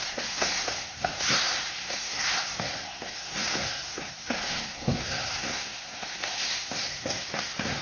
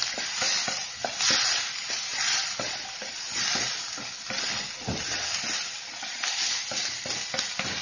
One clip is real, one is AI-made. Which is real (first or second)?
second